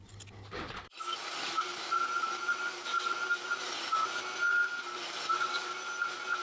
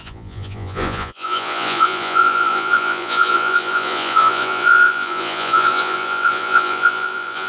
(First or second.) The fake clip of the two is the second